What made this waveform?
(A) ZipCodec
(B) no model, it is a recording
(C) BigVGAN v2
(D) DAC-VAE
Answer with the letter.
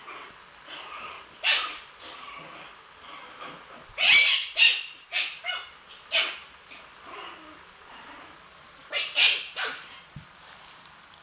B